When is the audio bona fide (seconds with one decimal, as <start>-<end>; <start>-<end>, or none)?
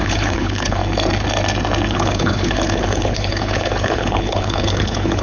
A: 0.8-1.9